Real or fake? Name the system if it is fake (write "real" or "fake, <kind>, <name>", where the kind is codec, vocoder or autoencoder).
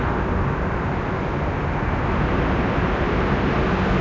real